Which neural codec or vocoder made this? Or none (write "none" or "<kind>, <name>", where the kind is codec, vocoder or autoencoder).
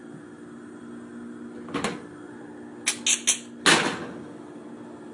none